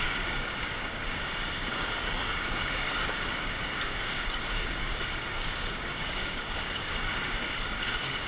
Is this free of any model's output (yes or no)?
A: no